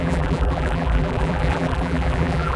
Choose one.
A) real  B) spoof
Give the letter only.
B